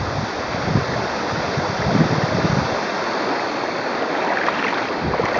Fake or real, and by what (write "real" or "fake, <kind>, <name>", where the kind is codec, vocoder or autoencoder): real